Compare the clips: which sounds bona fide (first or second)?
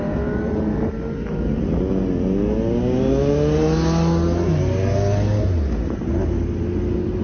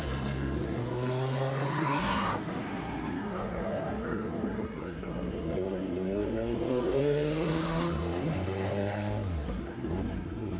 first